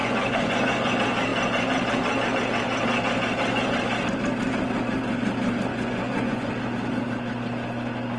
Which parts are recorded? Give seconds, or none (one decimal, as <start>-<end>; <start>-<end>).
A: 0.9-5.7; 6.5-8.2